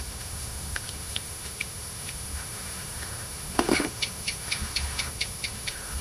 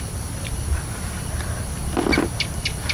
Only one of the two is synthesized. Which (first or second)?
first